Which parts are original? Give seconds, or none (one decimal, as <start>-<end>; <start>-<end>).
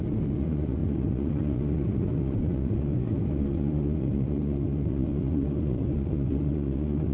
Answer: none